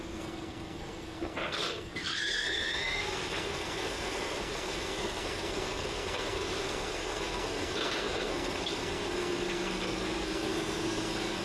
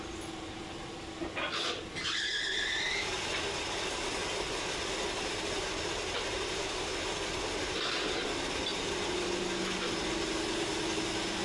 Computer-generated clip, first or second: first